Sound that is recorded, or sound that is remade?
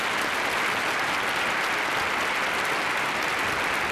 recorded